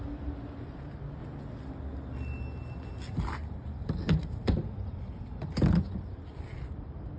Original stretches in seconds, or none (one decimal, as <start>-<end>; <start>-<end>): 1.2-3.3